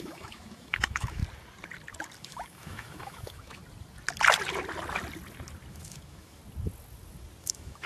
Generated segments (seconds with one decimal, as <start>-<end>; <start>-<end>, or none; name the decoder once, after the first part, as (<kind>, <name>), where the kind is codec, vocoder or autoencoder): 0.0-1.2 (autoencoder, DAC-VAE); 2.2-3.6; 5.7-6.4; 7.4-7.9